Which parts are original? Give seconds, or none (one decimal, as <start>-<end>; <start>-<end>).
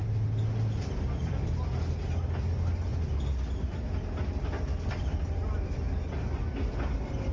0.0-7.3